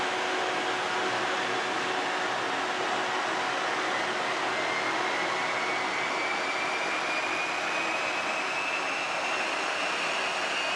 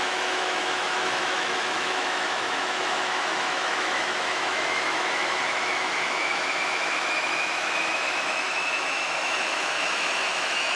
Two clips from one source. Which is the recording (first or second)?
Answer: first